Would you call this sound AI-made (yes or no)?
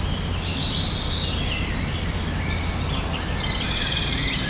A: no